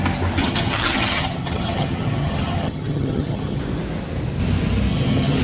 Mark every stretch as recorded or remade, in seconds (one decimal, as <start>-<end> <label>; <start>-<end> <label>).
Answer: 0.0-0.4 recorded; 0.4-3.6 remade; 3.6-4.9 recorded; 4.9-5.4 remade